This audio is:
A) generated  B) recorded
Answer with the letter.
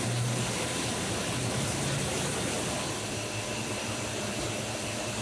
B